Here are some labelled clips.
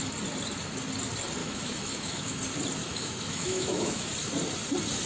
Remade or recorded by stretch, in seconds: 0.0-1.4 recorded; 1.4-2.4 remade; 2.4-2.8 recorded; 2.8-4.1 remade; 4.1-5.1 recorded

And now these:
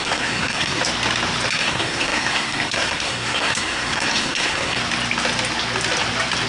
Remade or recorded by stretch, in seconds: 0.0-0.8 remade; 0.8-1.5 recorded; 1.5-4.8 remade; 4.8-6.5 recorded

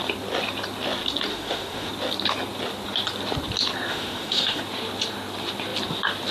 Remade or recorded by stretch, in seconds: 0.0-1.3 recorded; 1.3-1.9 remade; 1.9-3.9 recorded; 3.9-4.6 remade; 4.6-6.3 recorded

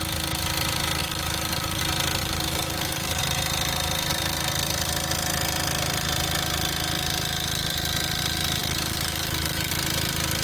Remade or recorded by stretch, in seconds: 0.0-1.0 recorded; 1.0-1.8 remade; 1.8-2.2 recorded; 2.2-3.2 remade; 3.2-8.6 recorded; 8.6-9.7 remade; 9.7-10.4 recorded

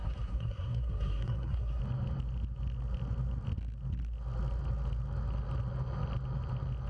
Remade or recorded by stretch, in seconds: 0.0-1.8 remade; 1.8-6.9 recorded